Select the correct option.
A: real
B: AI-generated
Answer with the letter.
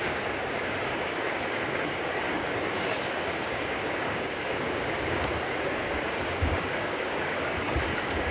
B